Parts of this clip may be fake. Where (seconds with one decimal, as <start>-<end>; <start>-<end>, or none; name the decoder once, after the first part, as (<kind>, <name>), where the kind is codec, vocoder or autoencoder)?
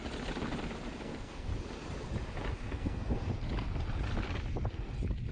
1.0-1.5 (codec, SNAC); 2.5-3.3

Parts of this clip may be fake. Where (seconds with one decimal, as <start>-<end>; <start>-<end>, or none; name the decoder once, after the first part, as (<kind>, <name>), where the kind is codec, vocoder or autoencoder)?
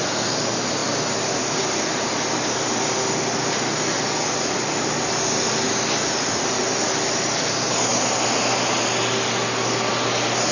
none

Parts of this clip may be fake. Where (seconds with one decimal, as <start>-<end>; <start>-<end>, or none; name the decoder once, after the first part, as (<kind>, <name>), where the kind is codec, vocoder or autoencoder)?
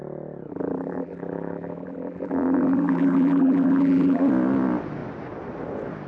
0.5-4.2 (vocoder, BigVGAN v2)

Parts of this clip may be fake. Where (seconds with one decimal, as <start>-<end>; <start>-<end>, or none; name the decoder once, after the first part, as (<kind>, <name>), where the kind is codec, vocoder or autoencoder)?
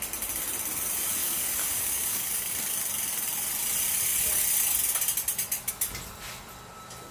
1.2-2.5 (codec, DAC)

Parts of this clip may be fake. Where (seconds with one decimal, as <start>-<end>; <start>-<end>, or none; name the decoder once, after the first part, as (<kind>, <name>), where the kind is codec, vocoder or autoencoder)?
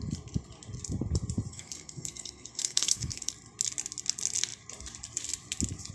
1.5-3.3 (codec, SNAC)